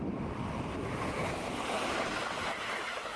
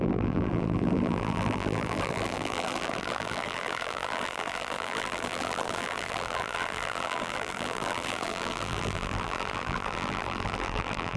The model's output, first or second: second